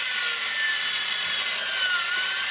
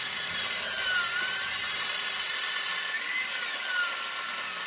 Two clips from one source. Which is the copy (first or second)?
second